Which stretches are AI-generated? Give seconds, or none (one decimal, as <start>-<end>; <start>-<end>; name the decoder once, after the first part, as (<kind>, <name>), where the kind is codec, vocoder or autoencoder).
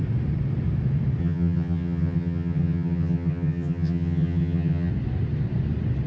1.2-4.9 (vocoder, HiFi-GAN)